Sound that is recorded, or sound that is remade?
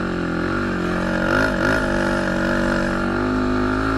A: recorded